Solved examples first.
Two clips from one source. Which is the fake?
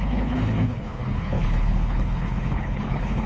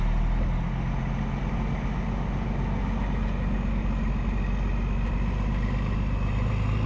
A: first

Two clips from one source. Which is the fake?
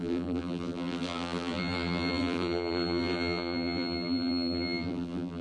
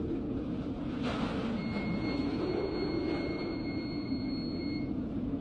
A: first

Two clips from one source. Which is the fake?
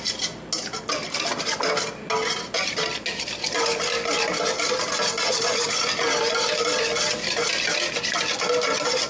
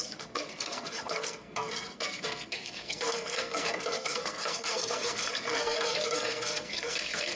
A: second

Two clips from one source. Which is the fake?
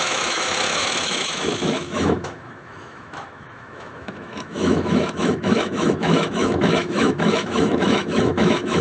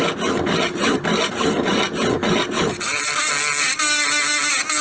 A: first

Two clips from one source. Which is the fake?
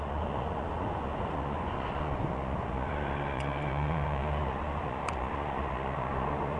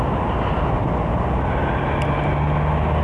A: first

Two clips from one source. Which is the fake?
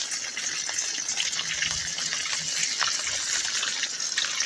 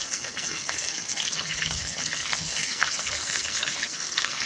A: second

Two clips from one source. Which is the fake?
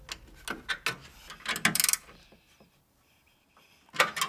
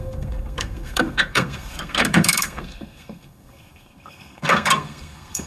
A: second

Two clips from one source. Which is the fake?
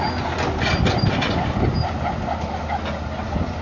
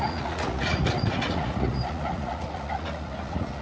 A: second